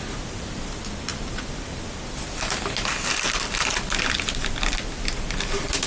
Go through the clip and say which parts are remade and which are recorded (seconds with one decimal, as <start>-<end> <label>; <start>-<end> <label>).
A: 0.0-5.9 recorded

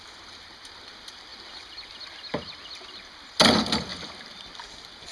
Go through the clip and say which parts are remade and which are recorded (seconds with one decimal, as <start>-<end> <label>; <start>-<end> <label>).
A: 0.0-5.1 recorded

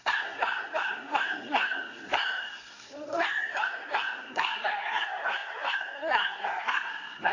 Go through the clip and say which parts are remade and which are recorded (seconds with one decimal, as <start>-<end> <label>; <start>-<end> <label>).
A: 0.0-7.3 remade